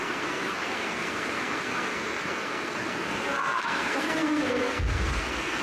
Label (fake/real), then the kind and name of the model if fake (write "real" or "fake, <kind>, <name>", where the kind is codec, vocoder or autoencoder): fake, codec, SNAC